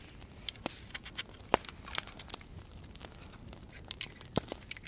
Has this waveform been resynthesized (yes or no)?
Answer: no